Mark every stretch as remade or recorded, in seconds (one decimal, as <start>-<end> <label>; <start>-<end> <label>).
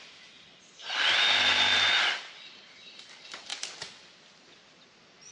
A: 0.0-5.3 recorded